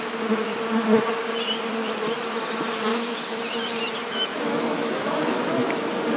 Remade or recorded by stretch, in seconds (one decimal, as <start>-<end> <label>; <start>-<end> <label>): 0.0-2.9 recorded; 2.9-3.4 remade; 3.4-4.0 recorded; 4.0-5.4 remade; 5.4-6.2 recorded